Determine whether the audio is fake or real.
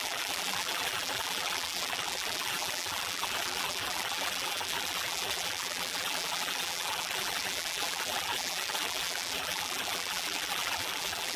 fake